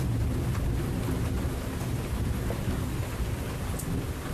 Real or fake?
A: real